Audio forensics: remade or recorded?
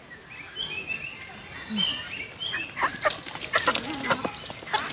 recorded